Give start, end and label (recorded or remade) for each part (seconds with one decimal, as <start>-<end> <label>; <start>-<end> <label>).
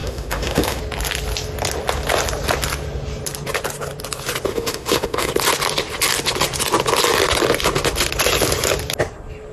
0.0-0.8 remade; 0.8-4.5 recorded; 4.5-5.3 remade; 5.3-9.5 recorded